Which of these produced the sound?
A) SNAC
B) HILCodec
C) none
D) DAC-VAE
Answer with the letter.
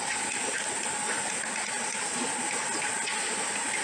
C